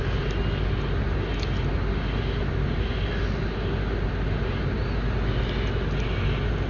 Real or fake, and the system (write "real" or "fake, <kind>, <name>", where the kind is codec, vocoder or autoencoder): real